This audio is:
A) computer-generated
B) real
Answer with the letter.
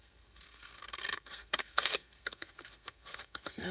A